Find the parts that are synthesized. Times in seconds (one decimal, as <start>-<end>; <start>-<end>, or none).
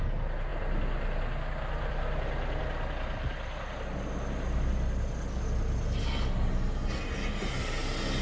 none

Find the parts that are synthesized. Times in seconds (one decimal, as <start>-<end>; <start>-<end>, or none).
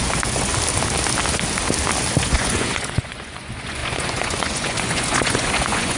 0.0-0.5; 2.2-6.0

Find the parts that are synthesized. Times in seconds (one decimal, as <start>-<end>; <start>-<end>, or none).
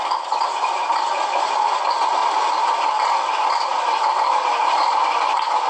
2.2-5.7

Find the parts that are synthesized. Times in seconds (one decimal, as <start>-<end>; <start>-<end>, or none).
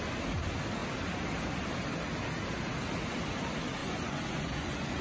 3.8-5.0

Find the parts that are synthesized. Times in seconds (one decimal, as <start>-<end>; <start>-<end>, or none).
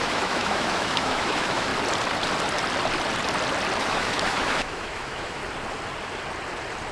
0.0-1.7; 3.8-5.4